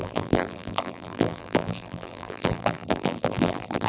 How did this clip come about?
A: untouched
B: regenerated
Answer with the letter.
B